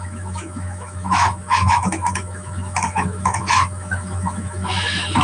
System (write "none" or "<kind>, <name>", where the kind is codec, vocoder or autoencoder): autoencoder, DAC-VAE